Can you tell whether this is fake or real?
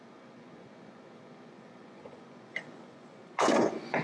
fake